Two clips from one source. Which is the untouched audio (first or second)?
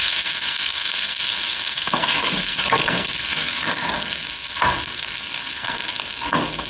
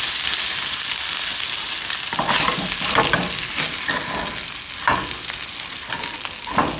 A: second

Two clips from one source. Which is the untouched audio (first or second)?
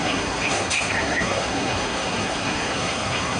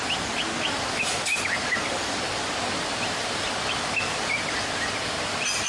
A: second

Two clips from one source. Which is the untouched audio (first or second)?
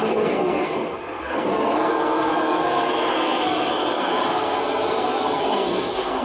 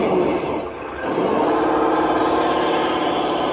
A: second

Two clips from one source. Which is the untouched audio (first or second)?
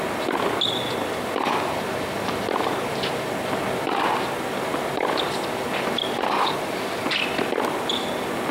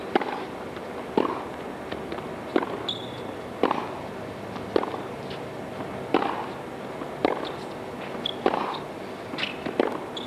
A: second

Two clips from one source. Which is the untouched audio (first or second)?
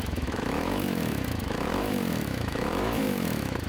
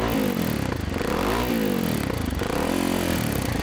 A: second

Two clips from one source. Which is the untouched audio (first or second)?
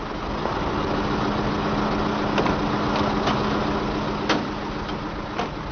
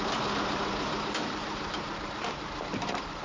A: first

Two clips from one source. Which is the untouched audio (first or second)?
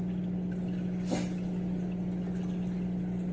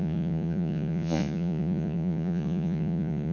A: first